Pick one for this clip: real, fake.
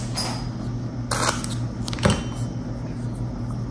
real